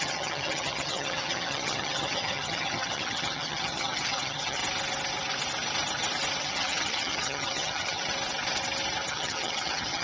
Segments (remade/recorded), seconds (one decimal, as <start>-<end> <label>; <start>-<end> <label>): 0.0-4.6 remade; 4.6-6.4 recorded; 6.4-8.0 remade; 8.0-9.1 recorded; 9.1-10.0 remade